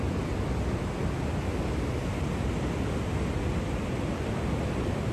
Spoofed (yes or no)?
no